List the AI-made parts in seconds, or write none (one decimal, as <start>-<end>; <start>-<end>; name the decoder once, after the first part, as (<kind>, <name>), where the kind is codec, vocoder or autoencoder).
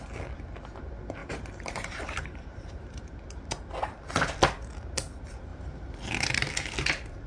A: 1.2-3.3 (vocoder, BigVGAN v2); 5.5-6.1